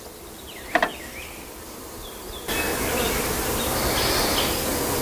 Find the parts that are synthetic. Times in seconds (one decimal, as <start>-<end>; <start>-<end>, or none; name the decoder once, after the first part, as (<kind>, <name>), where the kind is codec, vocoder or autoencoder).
0.9-2.1 (vocoder, BigVGAN v2); 2.7-4.5